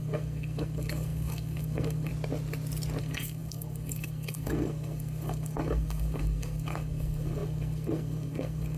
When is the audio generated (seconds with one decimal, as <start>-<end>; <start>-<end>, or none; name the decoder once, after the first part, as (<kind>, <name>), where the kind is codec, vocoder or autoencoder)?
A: 0.0-2.1 (codec, SNAC); 3.0-8.8